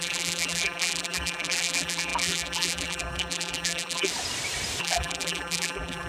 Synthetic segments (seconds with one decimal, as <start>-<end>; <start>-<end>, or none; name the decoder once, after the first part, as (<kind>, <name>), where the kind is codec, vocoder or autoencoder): 0.0-4.1 (vocoder, BigVGAN v2); 4.8-6.1